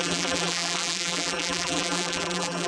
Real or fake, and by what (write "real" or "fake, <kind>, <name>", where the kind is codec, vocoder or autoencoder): fake, vocoder, BigVGAN v2